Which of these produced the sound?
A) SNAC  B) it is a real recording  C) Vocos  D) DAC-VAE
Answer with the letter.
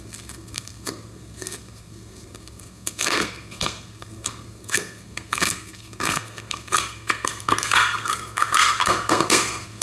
A